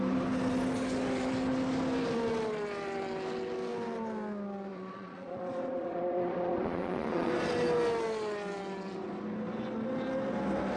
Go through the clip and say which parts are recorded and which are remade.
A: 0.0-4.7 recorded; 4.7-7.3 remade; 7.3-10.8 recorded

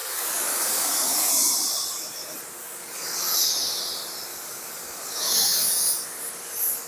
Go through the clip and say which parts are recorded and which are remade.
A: 0.0-1.3 remade; 1.3-2.6 recorded; 2.6-3.8 remade; 3.8-4.3 recorded; 4.3-6.3 remade; 6.3-6.9 recorded